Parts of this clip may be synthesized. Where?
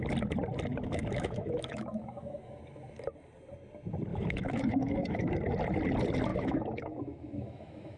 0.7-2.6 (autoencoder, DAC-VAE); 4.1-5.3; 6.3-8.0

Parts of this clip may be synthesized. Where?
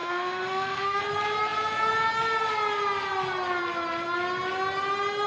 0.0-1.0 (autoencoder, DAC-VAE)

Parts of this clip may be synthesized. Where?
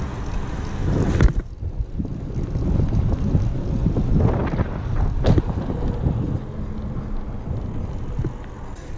none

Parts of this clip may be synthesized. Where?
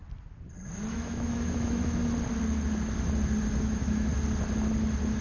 0.9-2.0 (autoencoder, DAC-VAE); 3.6-4.1